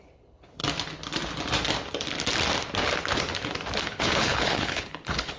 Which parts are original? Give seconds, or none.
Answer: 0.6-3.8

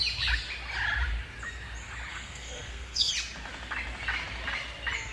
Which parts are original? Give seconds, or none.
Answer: 0.0-2.1; 3.1-5.1

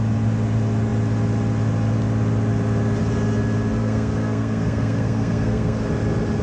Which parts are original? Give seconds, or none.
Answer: 0.0-3.8; 5.8-6.4

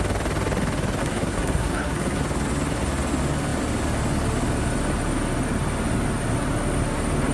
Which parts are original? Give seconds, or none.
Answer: 0.0-1.0; 2.2-7.3

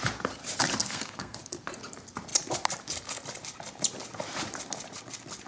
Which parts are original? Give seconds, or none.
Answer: 0.0-0.8; 1.4-5.5

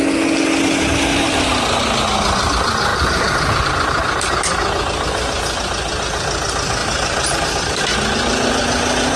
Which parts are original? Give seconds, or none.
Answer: 0.0-1.1; 1.6-2.9; 3.6-6.8; 7.4-9.2